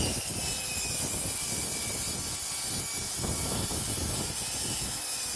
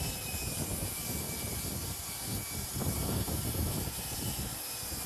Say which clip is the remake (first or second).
second